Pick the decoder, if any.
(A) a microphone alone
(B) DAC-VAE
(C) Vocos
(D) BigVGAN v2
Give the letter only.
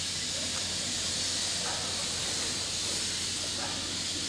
A